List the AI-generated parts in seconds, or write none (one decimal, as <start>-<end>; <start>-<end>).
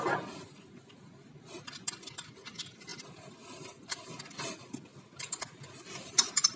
none